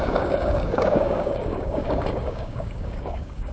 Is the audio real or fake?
fake